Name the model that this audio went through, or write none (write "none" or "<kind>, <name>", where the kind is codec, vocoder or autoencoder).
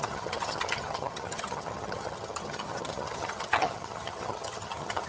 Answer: vocoder, HiFi-GAN